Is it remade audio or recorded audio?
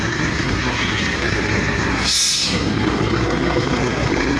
remade